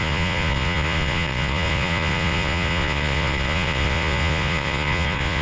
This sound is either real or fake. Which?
fake